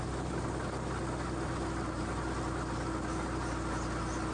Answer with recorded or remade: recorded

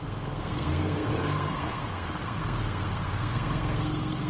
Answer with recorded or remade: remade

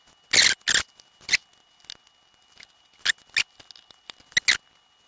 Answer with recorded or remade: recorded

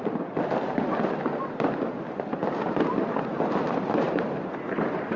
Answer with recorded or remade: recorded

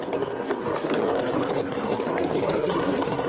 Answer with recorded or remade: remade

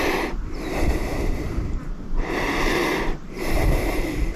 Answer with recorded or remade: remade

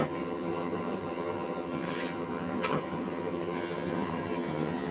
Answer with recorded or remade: remade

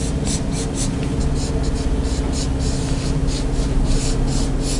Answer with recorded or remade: recorded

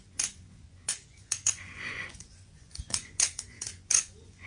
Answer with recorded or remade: remade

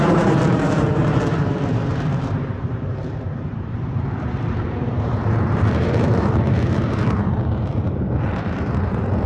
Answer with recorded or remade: remade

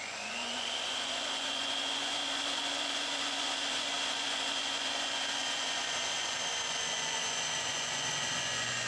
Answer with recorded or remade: remade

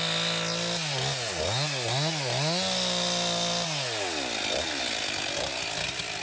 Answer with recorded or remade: recorded